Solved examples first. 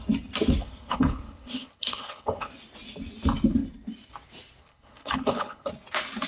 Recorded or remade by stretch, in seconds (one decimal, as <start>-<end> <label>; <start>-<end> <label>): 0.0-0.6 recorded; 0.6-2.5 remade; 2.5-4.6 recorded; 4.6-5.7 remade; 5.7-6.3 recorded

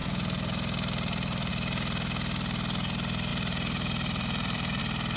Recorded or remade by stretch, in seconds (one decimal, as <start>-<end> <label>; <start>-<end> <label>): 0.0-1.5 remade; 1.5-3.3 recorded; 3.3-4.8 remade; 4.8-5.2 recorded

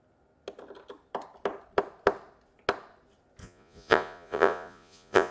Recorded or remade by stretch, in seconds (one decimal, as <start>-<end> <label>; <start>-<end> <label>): 0.0-3.4 recorded; 3.4-5.3 remade

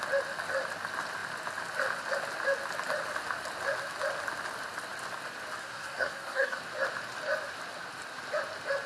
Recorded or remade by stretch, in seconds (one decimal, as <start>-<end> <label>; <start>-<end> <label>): 0.0-5.6 recorded; 5.6-6.6 remade; 6.6-8.9 recorded